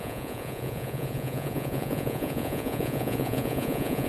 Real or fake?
fake